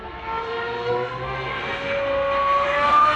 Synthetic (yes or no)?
yes